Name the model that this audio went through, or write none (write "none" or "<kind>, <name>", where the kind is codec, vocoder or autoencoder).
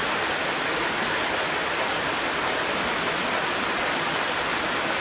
none